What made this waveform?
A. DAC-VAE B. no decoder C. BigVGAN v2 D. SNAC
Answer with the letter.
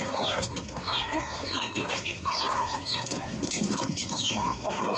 D